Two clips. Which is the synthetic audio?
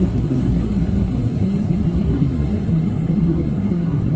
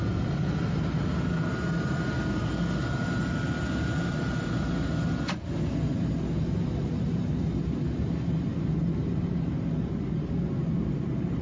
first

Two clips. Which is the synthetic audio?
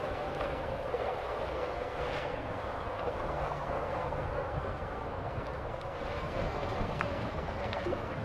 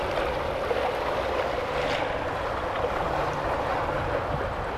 first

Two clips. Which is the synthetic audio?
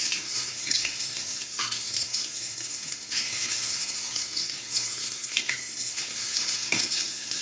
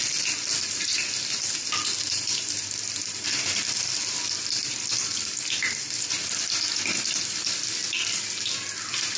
first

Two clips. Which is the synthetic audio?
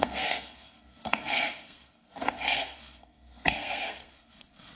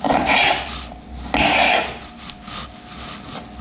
first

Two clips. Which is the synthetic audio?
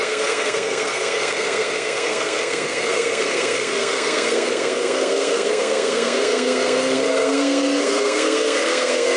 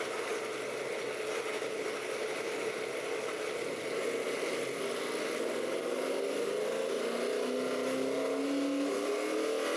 first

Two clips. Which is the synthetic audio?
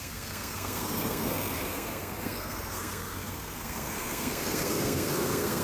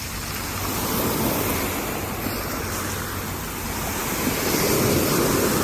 first